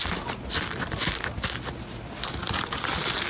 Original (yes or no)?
yes